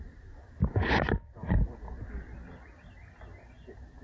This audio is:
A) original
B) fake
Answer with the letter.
A